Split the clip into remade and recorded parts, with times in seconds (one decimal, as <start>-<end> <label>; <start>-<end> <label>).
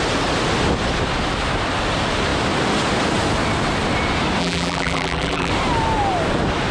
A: 0.0-4.4 recorded; 4.4-5.5 remade; 5.5-6.7 recorded